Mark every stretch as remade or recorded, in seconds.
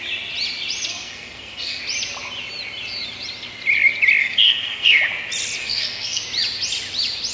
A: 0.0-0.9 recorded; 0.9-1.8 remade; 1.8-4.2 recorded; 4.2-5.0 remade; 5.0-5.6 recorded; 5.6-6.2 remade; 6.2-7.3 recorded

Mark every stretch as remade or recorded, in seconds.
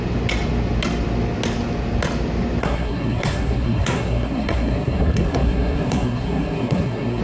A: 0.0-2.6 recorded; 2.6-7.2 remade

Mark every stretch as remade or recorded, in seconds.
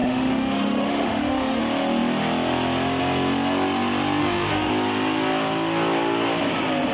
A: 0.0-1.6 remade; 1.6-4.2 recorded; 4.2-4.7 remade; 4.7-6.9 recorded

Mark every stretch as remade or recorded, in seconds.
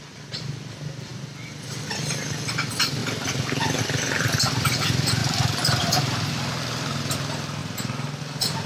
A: 0.0-7.6 remade; 7.6-8.2 recorded; 8.2-8.7 remade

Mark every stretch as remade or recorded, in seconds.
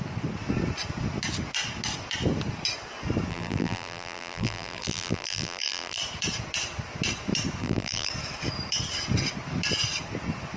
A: 0.0-3.3 recorded; 3.3-6.0 remade; 6.0-7.6 recorded; 7.6-8.1 remade; 8.1-10.6 recorded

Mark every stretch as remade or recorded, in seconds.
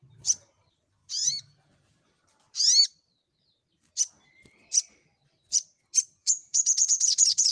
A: 0.0-6.2 recorded; 6.2-7.1 remade; 7.1-7.5 recorded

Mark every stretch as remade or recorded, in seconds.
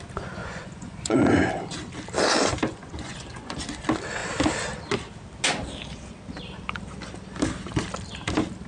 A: 0.0-0.4 recorded; 0.4-1.5 remade; 1.5-2.7 recorded; 2.7-3.6 remade; 3.6-8.7 recorded